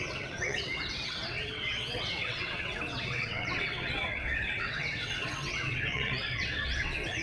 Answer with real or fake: fake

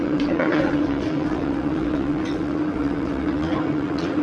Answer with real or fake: fake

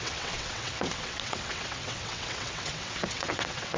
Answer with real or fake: fake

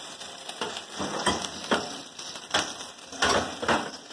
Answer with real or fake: real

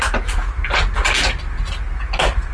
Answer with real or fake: real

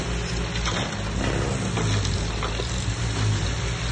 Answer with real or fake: real